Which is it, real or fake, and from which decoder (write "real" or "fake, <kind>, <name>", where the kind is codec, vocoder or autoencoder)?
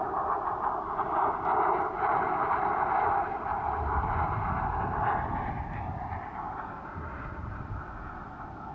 real